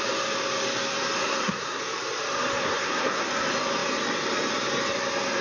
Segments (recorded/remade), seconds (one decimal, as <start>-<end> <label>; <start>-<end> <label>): 0.0-1.2 recorded; 1.2-1.8 remade; 1.8-2.6 recorded; 2.6-3.3 remade; 3.3-5.4 recorded